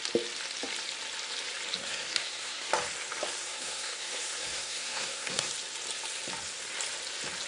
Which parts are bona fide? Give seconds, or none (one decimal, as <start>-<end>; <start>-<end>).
0.0-1.8; 2.7-3.4; 5.5-7.5